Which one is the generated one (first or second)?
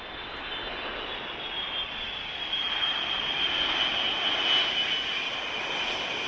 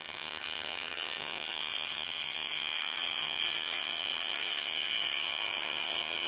second